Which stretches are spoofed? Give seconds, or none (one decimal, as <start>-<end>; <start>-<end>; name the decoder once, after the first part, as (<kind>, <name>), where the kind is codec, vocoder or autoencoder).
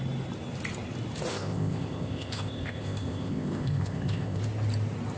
1.3-4.4 (codec, ZipCodec)